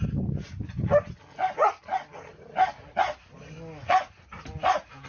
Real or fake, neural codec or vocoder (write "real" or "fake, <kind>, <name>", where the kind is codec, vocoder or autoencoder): real